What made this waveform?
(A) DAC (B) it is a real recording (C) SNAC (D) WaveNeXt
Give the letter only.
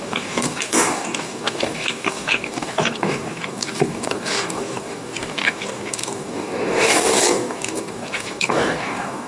A